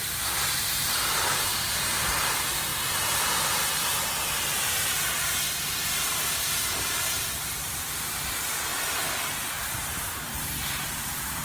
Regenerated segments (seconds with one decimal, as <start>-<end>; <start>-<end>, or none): 0.0-8.7; 9.9-11.4